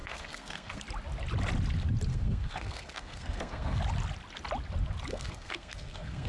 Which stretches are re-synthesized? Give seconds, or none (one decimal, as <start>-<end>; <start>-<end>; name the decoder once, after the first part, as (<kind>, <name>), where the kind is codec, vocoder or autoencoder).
0.0-0.8 (codec, SNAC); 2.1-3.8; 5.1-6.3